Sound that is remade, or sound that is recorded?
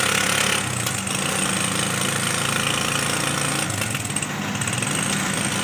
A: recorded